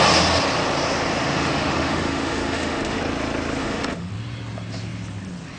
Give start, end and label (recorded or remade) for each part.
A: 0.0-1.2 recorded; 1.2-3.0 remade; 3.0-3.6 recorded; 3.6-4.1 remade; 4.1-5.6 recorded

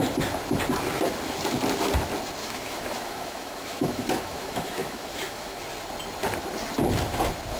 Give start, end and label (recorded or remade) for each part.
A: 0.0-2.4 recorded; 2.4-5.6 remade; 5.6-7.6 recorded

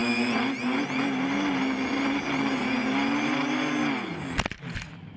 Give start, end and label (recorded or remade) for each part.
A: 0.0-5.2 recorded

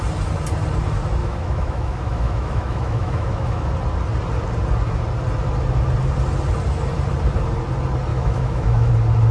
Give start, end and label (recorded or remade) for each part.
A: 0.0-1.2 recorded; 1.2-3.7 remade; 3.7-8.1 recorded; 8.1-8.9 remade; 8.9-9.3 recorded

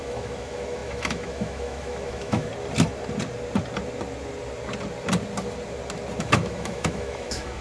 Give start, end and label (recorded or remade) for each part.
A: 0.0-2.5 remade; 2.5-6.2 recorded; 6.2-7.6 remade

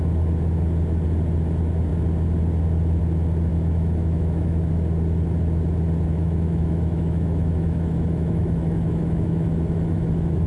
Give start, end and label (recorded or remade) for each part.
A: 0.0-3.5 recorded; 3.5-4.7 remade; 4.7-6.1 recorded; 6.1-10.5 remade

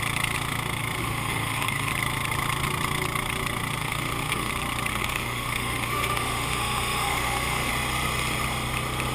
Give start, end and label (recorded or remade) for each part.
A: 0.0-1.0 recorded; 1.0-1.9 remade; 1.9-3.8 recorded; 3.8-4.5 remade; 4.5-4.9 recorded; 4.9-7.7 remade; 7.7-9.1 recorded